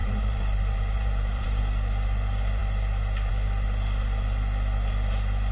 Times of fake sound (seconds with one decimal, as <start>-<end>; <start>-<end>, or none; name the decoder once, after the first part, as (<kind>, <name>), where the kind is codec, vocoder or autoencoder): 0.0-1.6 (vocoder, BigVGAN v2)